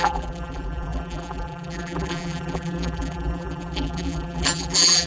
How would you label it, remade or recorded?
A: remade